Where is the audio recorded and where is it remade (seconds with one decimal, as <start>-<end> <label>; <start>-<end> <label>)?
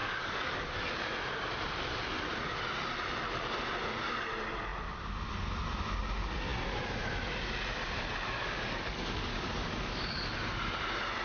0.0-0.7 remade; 0.7-8.4 recorded; 8.4-10.3 remade; 10.3-11.2 recorded